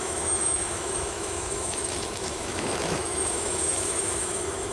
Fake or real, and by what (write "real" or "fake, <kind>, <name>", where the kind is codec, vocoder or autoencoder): fake, autoencoder, DAC-VAE